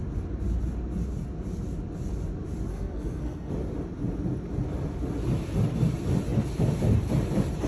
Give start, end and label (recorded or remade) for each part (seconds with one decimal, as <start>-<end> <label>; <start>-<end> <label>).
0.0-2.7 recorded; 2.7-3.5 remade; 3.5-7.7 recorded